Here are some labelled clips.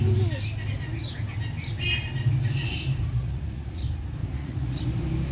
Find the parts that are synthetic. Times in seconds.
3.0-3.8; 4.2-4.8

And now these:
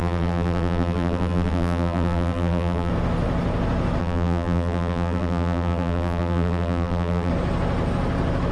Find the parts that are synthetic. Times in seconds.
0.0-2.9; 4.0-7.3

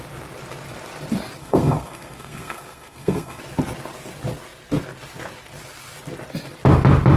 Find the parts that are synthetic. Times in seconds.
1.4-3.4

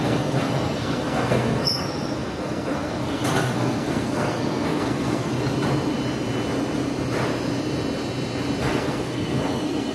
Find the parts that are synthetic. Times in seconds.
0.0-5.3; 8.6-9.9

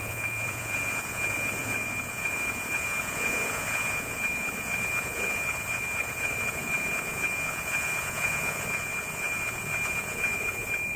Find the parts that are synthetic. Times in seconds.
0.0-11.0

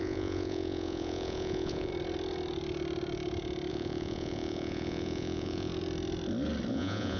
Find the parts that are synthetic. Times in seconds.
0.0-1.9; 3.7-5.7; 6.7-7.2